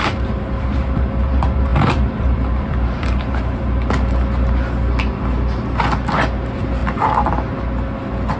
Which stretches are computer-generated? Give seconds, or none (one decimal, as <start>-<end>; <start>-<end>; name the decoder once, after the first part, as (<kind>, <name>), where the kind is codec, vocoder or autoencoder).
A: 1.7-3.2 (vocoder, BigVGAN v2); 6.8-7.6